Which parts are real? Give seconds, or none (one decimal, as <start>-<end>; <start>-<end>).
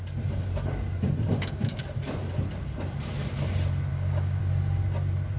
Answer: 0.0-1.3; 1.8-3.9; 4.4-5.4